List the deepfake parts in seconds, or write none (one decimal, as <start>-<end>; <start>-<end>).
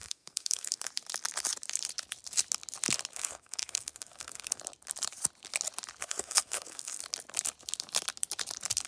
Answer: 0.0-0.9; 3.1-4.6; 6.0-7.0